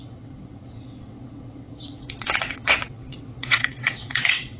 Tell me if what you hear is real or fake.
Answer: fake